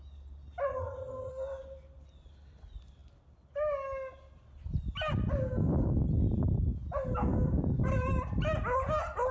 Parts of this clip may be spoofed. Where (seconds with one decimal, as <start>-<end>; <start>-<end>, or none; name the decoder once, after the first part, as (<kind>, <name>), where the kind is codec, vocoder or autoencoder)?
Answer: 0.7-1.3 (vocoder, HiFi-GAN)